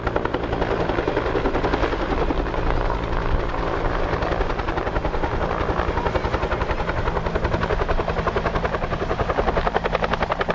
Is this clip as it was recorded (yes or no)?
yes